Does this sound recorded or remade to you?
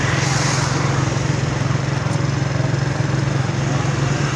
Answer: recorded